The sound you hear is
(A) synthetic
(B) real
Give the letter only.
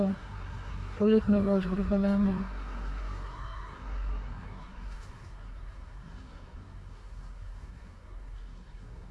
A